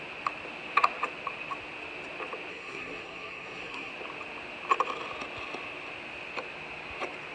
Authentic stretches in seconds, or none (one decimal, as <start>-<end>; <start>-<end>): 0.0-2.5; 3.9-7.3